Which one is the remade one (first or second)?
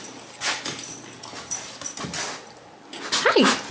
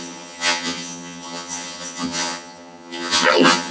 second